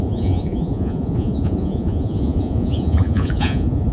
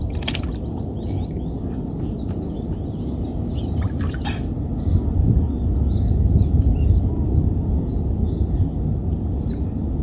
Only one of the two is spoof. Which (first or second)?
first